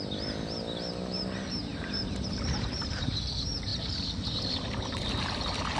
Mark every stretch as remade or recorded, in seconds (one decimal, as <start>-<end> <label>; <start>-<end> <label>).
0.0-1.7 recorded; 1.7-3.1 remade; 3.1-5.8 recorded